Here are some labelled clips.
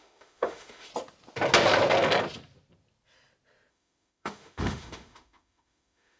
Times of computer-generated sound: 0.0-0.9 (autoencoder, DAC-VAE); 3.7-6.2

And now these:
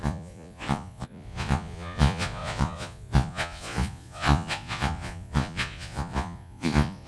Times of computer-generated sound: 0.0-7.1 (vocoder, Vocos)

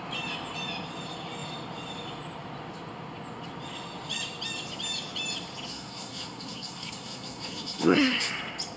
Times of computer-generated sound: 5.7-8.3 (codec, SNAC)

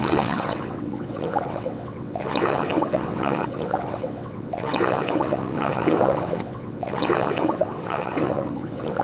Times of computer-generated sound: 0.0-9.0 (vocoder, WaveNeXt)

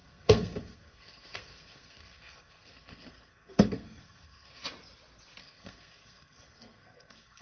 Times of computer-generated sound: 0.0-4.6 (codec, SNAC); 5.4-7.4

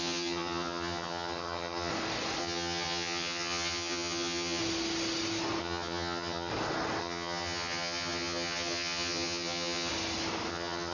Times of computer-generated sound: 0.0-1.9 (vocoder, HiFi-GAN); 2.4-4.6; 5.6-6.5; 7.0-9.9; 10.5-10.9

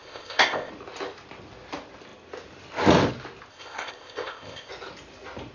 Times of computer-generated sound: 0.0-0.7 (codec, ZipCodec); 3.5-4.7

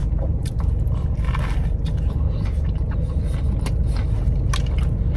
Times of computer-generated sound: none